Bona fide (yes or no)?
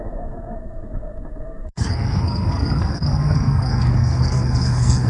no